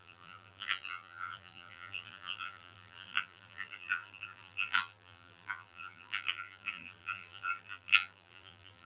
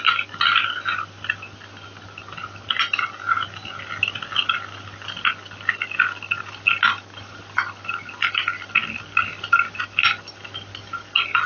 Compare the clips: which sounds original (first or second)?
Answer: second